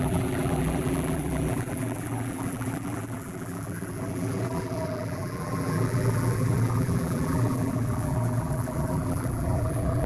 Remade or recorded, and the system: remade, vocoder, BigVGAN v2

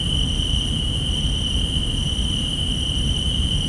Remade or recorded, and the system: remade, vocoder, BigVGAN v2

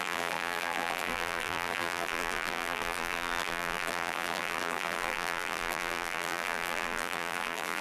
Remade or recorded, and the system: remade, vocoder, BigVGAN v2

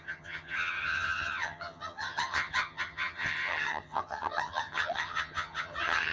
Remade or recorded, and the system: remade, vocoder, HiFi-GAN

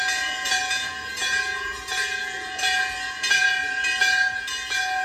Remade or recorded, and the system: remade, vocoder, Vocos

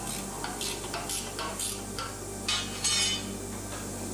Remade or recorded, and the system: recorded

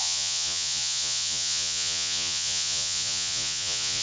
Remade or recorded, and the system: remade, vocoder, Vocos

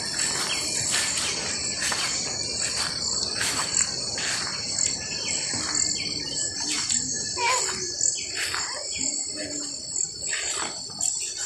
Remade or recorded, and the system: recorded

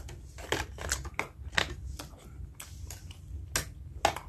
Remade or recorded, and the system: recorded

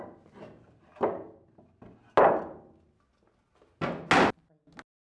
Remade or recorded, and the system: recorded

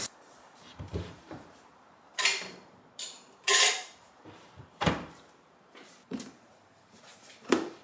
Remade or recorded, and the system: remade, vocoder, BigVGAN v2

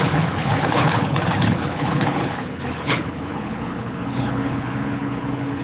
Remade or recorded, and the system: remade, codec, HILCodec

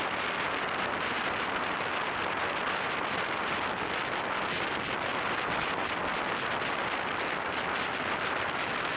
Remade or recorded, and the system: recorded